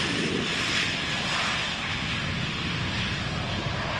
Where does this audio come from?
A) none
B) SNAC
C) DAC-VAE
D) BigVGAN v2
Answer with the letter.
A